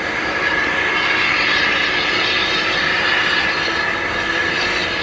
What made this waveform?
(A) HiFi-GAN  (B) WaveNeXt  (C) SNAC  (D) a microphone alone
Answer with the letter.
D